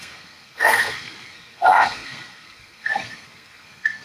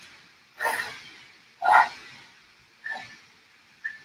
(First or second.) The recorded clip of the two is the second